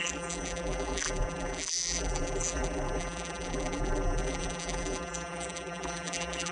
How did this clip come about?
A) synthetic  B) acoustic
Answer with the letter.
A